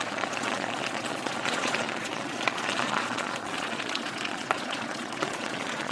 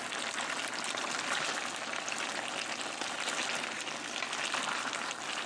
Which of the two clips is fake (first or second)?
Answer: first